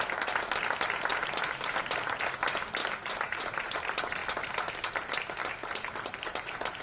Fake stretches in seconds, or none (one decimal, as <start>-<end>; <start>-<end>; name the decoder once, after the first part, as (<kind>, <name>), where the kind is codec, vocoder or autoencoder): 1.1-2.2 (vocoder, BigVGAN v2); 2.8-3.8; 4.2-4.7; 5.4-6.2